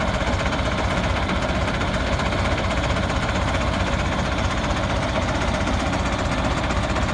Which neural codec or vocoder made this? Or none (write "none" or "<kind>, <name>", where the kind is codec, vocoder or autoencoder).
none